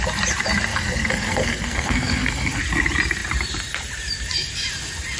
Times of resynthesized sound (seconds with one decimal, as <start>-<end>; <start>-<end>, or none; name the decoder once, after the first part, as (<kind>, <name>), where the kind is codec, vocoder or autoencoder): 0.7-2.6 (codec, SNAC)